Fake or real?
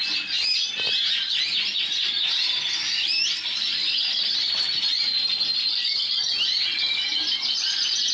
real